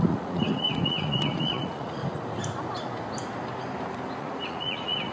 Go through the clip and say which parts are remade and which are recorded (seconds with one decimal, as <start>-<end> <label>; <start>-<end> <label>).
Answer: 0.0-2.0 remade; 2.0-4.2 recorded; 4.2-5.1 remade